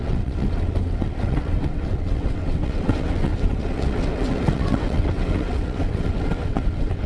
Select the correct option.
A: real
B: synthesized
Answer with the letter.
B